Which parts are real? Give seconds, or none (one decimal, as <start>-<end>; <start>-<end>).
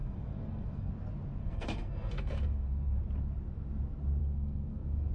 0.9-1.4; 3.0-4.2